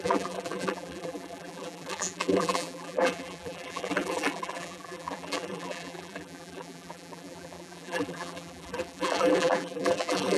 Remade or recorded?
remade